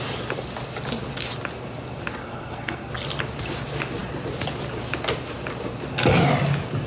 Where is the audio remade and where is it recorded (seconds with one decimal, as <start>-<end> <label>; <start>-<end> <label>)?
0.0-2.2 recorded; 2.2-2.9 remade; 2.9-6.9 recorded